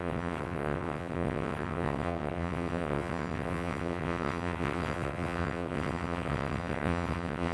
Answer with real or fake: fake